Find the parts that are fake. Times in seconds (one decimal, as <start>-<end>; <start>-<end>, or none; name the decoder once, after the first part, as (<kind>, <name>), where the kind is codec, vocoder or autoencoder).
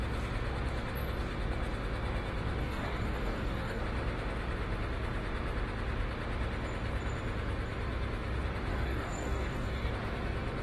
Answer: 2.6-3.8 (codec, DAC); 8.7-9.9